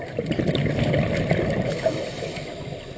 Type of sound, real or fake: fake